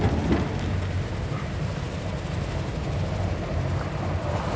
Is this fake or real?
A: real